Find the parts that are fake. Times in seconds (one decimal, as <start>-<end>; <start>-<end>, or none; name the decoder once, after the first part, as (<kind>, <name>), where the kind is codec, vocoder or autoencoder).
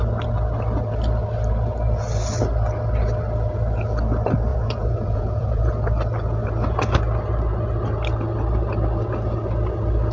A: 4.5-5.7 (vocoder, Vocos)